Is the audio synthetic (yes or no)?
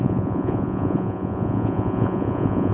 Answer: yes